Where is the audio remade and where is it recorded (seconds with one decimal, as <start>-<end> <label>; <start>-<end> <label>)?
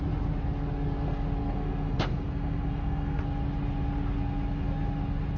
0.0-1.4 recorded; 1.4-3.2 remade; 3.2-5.4 recorded